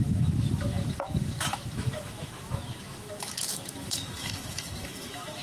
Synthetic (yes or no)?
yes